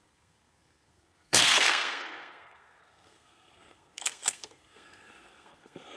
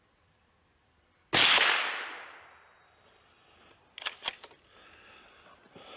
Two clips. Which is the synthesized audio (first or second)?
first